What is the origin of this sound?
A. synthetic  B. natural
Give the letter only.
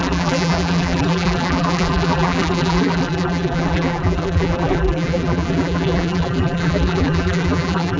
A